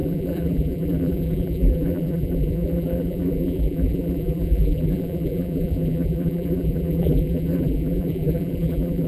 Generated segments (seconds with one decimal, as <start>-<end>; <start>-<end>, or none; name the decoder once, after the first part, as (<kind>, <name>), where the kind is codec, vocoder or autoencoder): 0.0-9.1 (vocoder, BigVGAN v2)